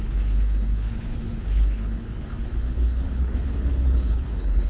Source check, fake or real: fake